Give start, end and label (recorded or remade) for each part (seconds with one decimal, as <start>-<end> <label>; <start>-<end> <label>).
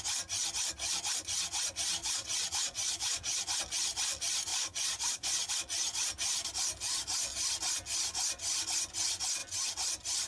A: 0.0-2.0 recorded; 2.0-3.4 remade; 3.4-4.5 recorded; 4.5-5.5 remade; 5.5-10.3 recorded